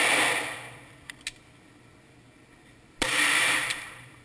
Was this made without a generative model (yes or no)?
yes